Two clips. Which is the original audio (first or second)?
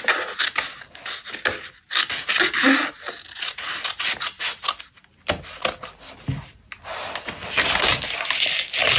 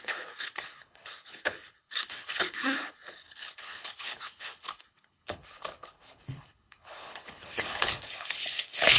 first